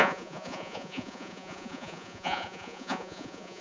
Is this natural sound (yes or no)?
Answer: no